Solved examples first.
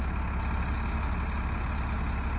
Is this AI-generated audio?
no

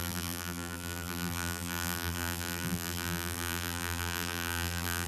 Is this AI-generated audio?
yes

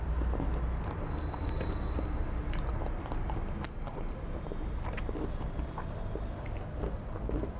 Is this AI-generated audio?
no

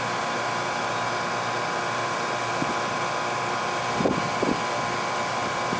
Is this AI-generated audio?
no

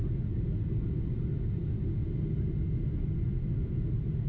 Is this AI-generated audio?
no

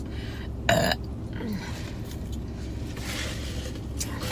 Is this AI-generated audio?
no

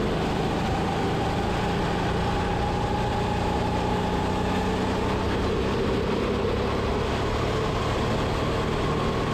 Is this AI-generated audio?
no